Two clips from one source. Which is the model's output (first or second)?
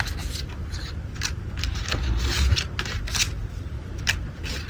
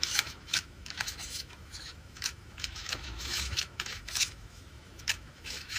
second